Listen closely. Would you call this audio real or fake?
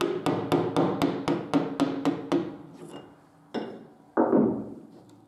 real